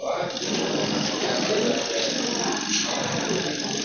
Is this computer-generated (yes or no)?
no